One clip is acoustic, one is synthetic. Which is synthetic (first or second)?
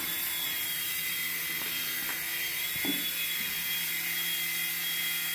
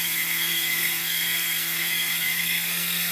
second